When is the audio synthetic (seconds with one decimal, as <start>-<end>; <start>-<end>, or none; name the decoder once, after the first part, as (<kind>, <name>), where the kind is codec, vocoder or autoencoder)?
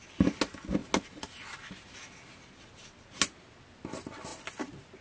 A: none